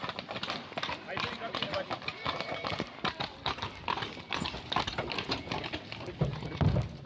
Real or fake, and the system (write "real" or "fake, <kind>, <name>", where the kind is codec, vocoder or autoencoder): real